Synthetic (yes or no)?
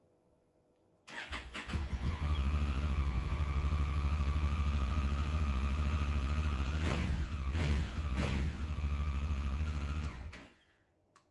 yes